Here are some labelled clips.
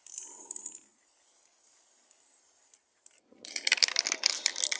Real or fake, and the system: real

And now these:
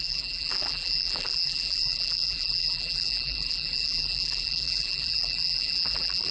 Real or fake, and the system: fake, vocoder, BigVGAN v2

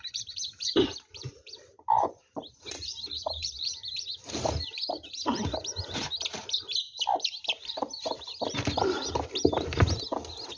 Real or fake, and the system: fake, vocoder, BigVGAN v2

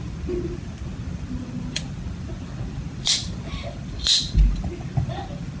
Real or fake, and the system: fake, vocoder, BigVGAN v2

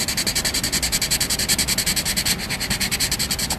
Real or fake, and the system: real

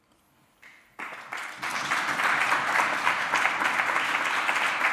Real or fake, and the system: real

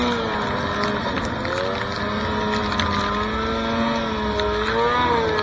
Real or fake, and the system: real